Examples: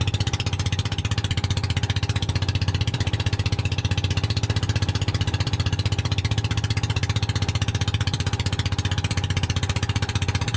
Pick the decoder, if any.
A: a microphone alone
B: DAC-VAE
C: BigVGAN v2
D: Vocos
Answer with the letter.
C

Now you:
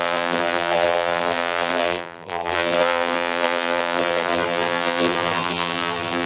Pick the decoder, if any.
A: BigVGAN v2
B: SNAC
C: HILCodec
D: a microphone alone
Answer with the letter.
A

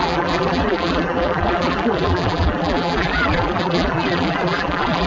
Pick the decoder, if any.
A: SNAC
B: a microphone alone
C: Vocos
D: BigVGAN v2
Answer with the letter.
D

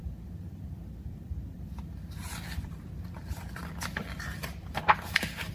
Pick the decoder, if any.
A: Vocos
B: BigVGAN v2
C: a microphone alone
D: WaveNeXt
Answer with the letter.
B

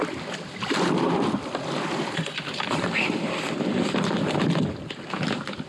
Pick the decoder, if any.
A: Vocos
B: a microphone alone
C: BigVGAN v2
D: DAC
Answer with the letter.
B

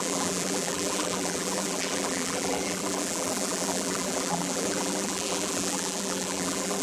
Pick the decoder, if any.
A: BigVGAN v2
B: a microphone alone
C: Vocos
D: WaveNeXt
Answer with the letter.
A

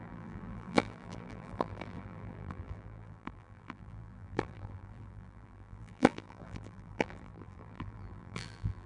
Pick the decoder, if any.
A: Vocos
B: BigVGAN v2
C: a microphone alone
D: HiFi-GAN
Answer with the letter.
B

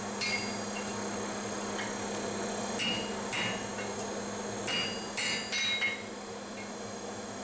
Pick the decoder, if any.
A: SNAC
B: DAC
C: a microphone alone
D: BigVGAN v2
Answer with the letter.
C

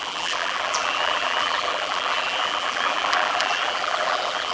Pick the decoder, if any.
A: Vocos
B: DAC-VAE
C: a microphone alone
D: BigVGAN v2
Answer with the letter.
D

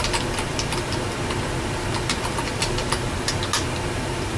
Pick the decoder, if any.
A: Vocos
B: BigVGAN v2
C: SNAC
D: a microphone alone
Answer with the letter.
D